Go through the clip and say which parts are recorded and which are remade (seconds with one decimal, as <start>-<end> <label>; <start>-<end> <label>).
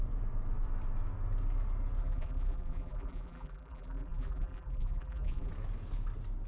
0.0-2.0 recorded; 2.0-5.5 remade; 5.5-6.5 recorded